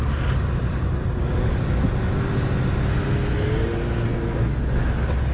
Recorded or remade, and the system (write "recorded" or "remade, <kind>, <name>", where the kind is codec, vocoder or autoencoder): recorded